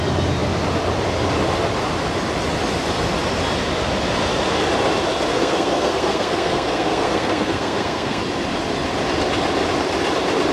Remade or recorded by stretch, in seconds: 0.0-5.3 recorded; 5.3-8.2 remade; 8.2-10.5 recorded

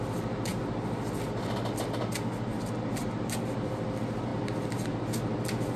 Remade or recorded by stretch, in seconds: 0.0-0.5 remade; 0.5-3.0 recorded; 3.0-4.3 remade; 4.3-5.8 recorded

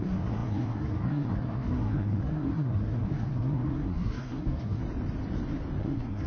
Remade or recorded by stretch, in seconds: 0.0-4.8 remade; 4.8-5.8 recorded; 5.8-6.3 remade

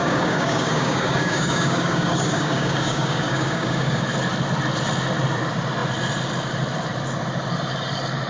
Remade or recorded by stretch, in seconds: 0.0-4.0 remade; 4.0-8.3 recorded

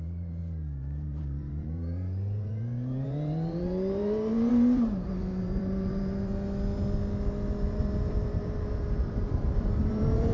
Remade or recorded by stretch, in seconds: 0.0-6.3 remade; 6.3-7.6 recorded; 7.6-10.3 remade

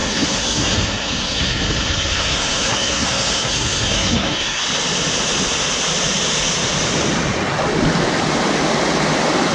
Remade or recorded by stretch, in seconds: 0.0-4.6 remade; 4.6-9.5 recorded